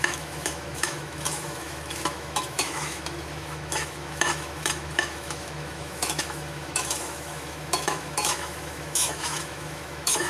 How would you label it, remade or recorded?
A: remade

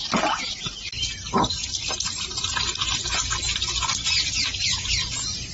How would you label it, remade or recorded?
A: recorded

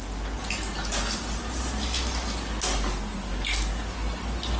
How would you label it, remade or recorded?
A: recorded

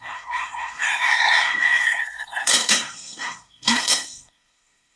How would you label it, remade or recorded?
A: remade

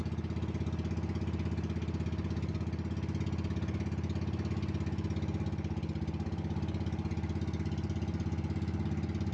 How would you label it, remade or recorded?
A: recorded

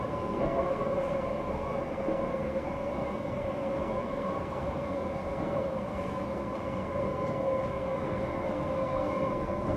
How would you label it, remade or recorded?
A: remade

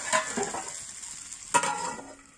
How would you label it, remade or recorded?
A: recorded